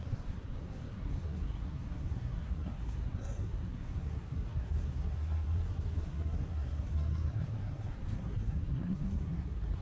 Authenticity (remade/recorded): remade